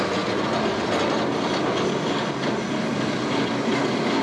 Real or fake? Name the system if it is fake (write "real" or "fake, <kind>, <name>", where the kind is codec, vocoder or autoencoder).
real